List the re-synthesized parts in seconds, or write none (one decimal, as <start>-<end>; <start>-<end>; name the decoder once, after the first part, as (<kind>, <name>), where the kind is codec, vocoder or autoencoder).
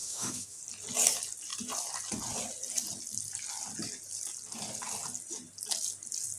0.0-0.6 (autoencoder, DAC-VAE)